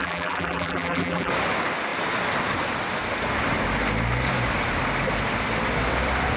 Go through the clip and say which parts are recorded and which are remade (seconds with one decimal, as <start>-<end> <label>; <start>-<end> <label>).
0.0-1.3 remade; 1.3-6.4 recorded